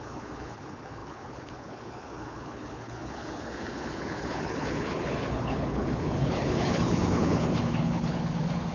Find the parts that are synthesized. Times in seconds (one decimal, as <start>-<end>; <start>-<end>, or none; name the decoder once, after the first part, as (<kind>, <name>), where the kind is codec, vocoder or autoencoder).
0.0-8.7 (codec, HILCodec)